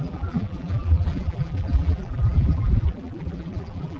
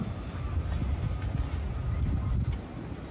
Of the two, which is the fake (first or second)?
first